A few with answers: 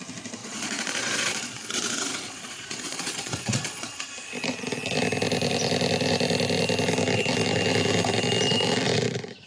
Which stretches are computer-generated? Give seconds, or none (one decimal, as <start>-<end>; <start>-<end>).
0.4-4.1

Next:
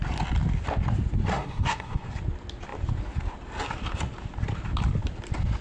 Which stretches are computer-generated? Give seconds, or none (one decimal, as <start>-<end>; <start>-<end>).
1.3-2.1

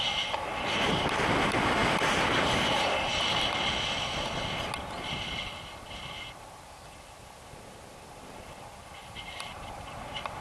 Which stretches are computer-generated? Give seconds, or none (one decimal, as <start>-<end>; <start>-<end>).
9.0-9.8